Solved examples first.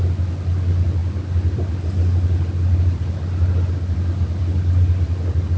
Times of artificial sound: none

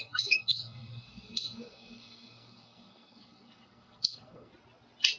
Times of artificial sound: 0.0-4.5 (codec, SNAC)

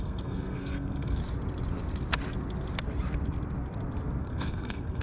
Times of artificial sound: 0.0-1.2 (codec, SNAC); 4.2-5.0

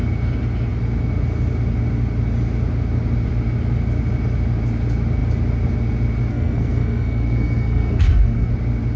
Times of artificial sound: 6.3-8.5 (codec, SNAC)

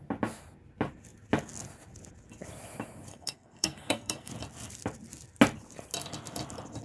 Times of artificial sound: 3.1-4.3 (codec, SNAC)

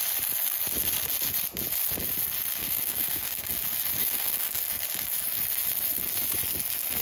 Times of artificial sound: 2.6-3.5 (codec, SNAC); 4.0-4.6

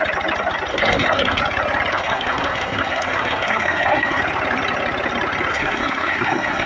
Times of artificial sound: 0.7-1.4 (codec, SNAC); 1.9-4.2; 5.5-6.7